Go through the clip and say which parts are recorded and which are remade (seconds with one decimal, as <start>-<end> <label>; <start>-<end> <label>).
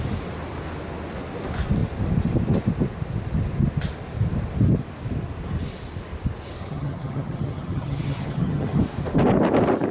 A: 0.0-6.6 recorded; 6.6-8.8 remade; 8.8-9.9 recorded